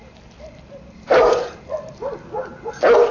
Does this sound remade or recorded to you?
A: recorded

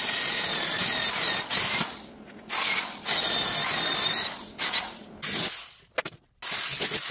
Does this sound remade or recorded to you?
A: recorded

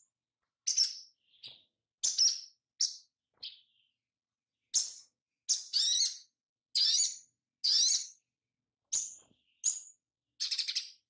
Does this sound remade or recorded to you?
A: recorded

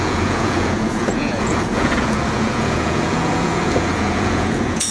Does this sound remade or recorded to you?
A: remade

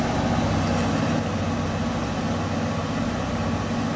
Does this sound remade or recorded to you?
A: recorded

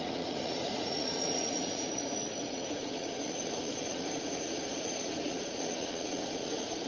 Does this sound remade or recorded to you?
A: remade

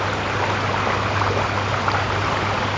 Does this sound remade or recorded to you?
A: recorded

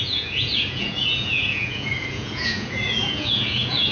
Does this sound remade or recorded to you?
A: remade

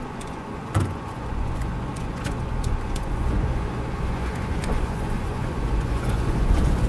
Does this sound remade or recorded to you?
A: remade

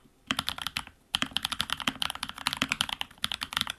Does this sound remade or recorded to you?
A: recorded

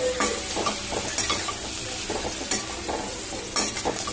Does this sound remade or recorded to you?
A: recorded